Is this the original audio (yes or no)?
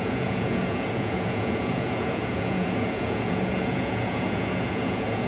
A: no